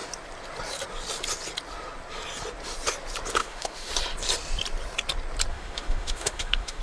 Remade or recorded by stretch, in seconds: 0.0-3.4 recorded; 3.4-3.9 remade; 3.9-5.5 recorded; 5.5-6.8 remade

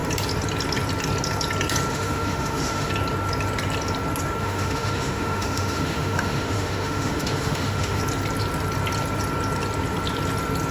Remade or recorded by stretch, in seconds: 0.0-1.9 recorded; 1.9-2.9 remade; 2.9-4.4 recorded; 4.4-8.0 remade; 8.0-10.7 recorded

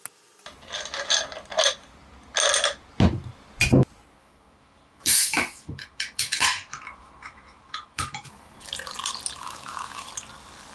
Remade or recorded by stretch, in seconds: 0.0-4.2 recorded; 4.2-8.7 remade; 8.7-9.4 recorded; 9.4-10.1 remade; 10.1-10.7 recorded

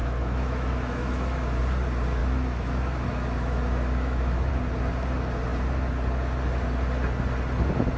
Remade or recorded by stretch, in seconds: 0.0-1.6 remade; 1.6-2.2 recorded; 2.2-4.5 remade; 4.5-8.0 recorded

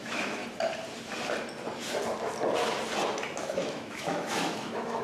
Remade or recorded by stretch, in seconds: 0.0-0.4 remade; 0.4-3.4 recorded; 3.4-5.0 remade